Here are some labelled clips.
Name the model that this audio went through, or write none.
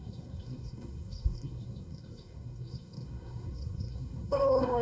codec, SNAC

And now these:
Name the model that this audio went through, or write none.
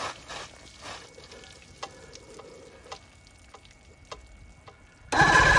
none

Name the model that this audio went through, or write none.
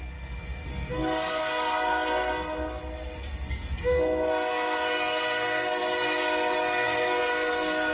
codec, SNAC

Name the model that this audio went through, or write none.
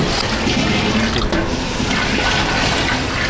none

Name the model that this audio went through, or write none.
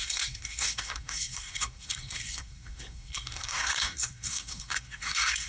codec, SNAC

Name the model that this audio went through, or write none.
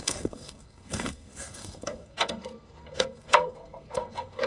codec, SNAC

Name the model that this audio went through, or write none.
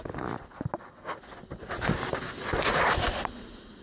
none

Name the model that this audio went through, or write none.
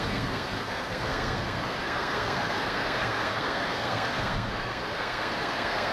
codec, SNAC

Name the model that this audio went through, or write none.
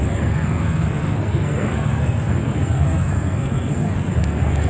codec, SNAC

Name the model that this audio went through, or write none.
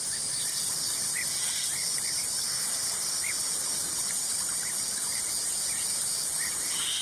none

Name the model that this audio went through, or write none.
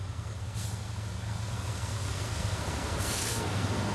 codec, SNAC